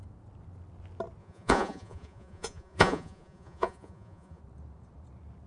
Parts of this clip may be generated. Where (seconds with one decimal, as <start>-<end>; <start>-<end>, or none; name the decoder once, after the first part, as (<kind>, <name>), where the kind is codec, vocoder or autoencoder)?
1.2-4.4 (vocoder, Vocos)